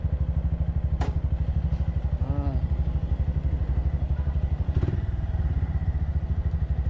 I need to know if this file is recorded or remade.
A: recorded